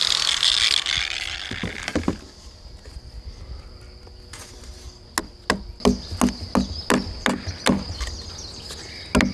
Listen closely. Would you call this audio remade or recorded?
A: recorded